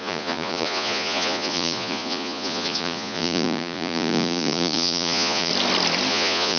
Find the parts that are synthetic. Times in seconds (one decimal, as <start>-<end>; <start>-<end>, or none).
0.0-5.5; 6.1-6.6